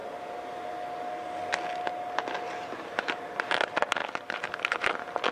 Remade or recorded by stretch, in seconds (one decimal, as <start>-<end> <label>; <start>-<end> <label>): 0.0-5.3 recorded